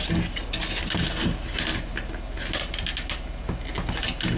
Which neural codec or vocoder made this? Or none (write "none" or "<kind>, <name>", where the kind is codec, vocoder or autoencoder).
none